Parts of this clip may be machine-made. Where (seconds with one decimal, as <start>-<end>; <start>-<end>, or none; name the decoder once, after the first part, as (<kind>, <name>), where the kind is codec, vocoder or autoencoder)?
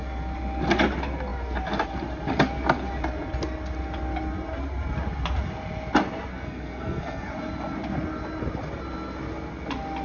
6.3-7.3 (codec, SNAC)